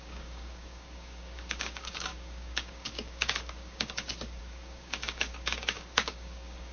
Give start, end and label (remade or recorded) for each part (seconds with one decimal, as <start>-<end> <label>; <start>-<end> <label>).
0.0-6.7 remade